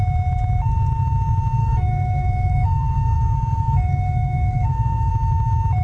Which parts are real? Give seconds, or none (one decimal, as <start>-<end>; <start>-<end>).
0.0-1.6; 5.1-5.8